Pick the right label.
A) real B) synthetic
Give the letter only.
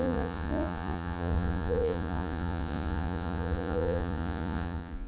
B